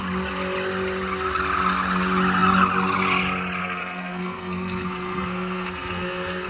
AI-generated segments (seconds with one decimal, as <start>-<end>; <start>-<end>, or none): 3.6-6.5